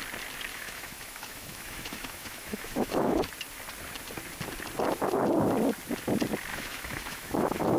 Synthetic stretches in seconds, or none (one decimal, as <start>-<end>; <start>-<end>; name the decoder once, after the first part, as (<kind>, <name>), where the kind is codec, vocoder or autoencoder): 0.5-3.3 (autoencoder, DAC-VAE); 6.5-7.8